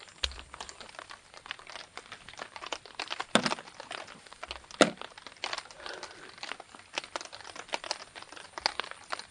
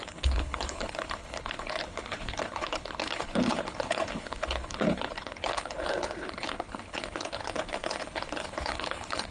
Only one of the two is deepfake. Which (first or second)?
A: second